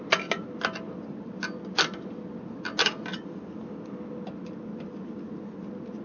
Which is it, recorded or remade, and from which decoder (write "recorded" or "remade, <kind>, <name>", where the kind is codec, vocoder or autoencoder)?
recorded